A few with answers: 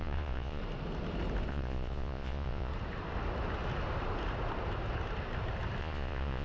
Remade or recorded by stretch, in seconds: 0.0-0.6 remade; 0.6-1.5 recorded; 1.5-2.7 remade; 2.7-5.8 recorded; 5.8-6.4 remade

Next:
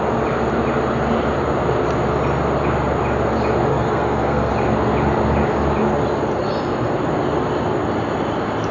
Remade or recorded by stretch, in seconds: 0.0-3.7 recorded; 3.7-4.5 remade; 4.5-8.7 recorded